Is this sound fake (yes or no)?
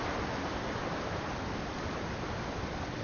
no